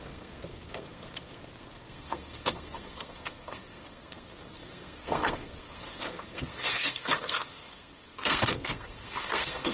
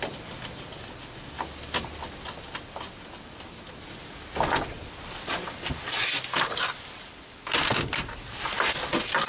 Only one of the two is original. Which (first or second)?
second